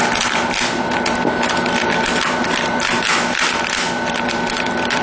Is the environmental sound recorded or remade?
recorded